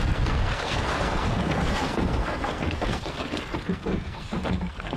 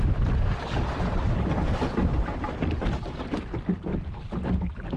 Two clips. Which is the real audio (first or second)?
second